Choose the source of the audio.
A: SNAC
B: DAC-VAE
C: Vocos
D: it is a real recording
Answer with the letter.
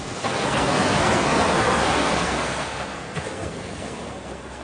A